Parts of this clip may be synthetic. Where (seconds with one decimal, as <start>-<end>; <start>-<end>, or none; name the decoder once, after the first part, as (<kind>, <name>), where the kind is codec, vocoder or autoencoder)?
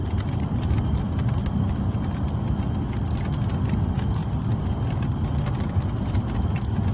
0.0-1.7 (vocoder, BigVGAN v2)